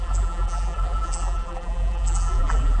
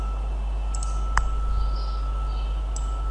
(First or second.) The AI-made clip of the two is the first